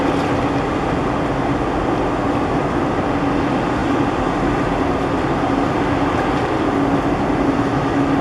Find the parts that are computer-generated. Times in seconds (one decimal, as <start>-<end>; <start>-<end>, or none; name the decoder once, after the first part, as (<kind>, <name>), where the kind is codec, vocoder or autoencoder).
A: none